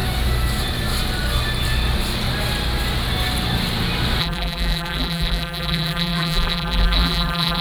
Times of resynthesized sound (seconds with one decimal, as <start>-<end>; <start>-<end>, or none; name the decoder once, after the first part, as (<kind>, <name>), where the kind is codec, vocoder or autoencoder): 4.2-7.6 (vocoder, BigVGAN v2)